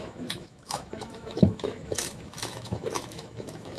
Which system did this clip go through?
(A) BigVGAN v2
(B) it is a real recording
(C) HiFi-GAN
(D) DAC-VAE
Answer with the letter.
D